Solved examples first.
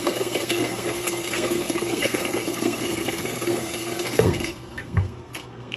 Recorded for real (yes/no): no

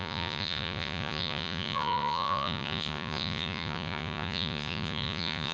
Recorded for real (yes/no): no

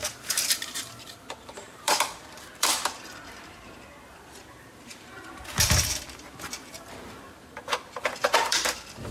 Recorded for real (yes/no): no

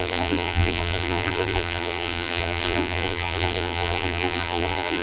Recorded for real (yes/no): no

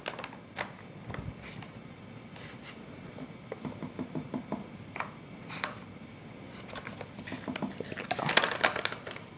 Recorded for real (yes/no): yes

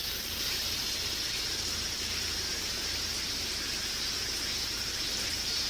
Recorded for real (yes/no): yes